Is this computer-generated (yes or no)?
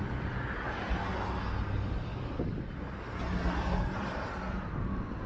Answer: no